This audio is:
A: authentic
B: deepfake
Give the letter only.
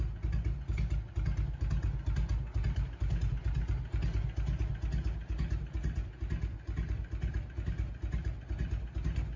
A